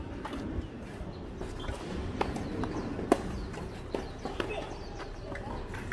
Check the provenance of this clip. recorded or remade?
recorded